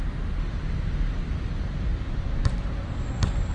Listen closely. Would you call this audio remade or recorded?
recorded